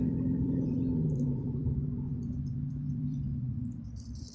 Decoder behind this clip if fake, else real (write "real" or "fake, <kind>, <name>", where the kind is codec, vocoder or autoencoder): fake, vocoder, BigVGAN v2